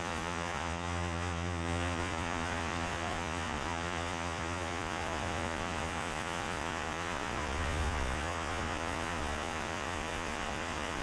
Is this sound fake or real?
fake